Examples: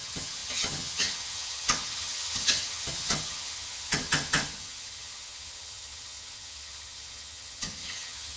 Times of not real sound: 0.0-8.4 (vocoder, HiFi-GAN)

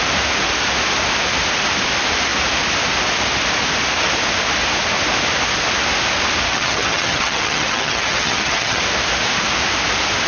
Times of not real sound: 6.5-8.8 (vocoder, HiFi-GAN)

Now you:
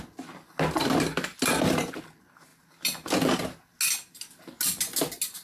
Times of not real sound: none